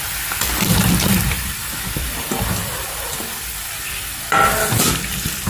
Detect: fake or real fake